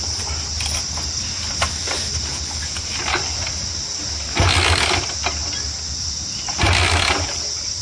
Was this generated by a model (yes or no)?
no